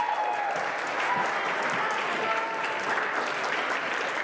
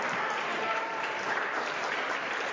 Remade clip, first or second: second